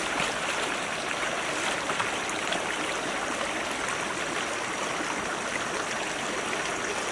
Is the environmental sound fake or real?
real